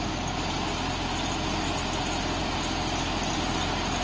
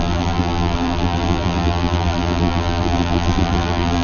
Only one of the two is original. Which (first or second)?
first